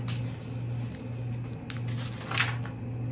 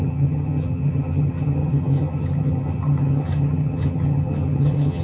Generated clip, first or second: second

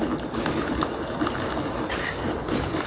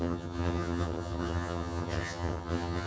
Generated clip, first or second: second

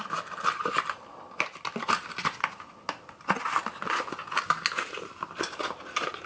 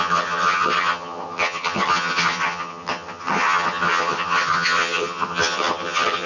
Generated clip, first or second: second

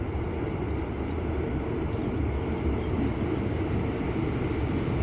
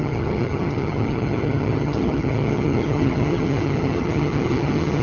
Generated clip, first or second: second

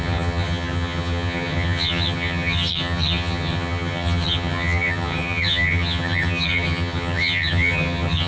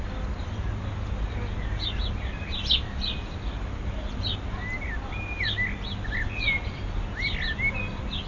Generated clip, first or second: first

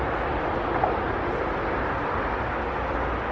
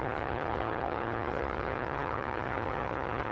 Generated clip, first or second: second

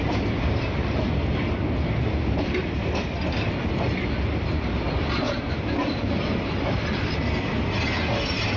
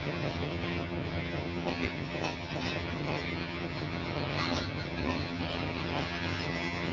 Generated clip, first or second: second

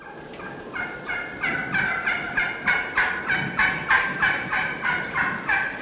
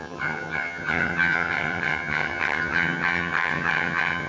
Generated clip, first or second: second